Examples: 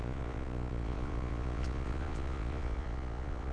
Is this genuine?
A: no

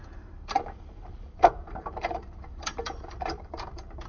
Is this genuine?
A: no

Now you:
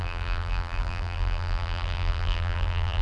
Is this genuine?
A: no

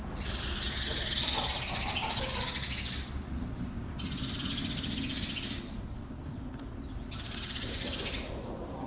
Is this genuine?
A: yes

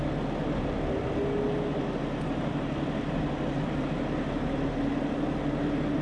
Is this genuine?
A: yes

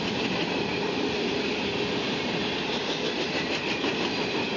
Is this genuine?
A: yes